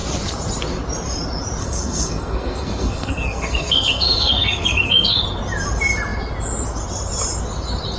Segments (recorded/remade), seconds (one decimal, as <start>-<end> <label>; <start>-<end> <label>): 0.0-1.6 recorded; 1.6-5.2 remade; 5.2-8.0 recorded